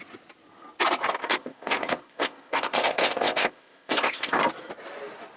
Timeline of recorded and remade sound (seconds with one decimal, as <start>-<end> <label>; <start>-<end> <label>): 0.0-1.2 recorded; 1.2-4.4 remade; 4.4-5.4 recorded